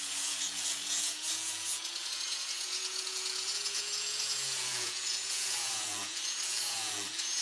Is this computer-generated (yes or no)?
yes